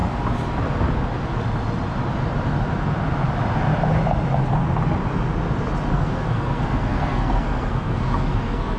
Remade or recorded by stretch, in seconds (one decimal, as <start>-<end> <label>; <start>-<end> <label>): 0.0-5.9 recorded; 5.9-8.8 remade